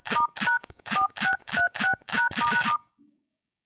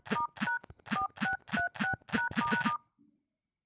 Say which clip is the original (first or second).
second